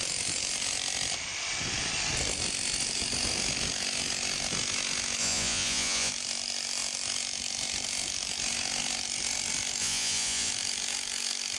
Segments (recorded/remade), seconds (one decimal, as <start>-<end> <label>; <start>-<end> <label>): 0.0-5.2 recorded; 5.2-6.1 remade; 6.1-9.8 recorded; 9.8-10.5 remade; 10.5-11.6 recorded